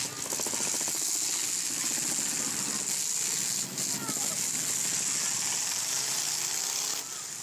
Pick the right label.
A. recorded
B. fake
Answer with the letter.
A